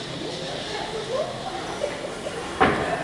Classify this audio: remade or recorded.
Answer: remade